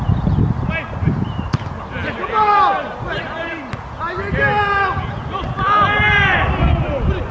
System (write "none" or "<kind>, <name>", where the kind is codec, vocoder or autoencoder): none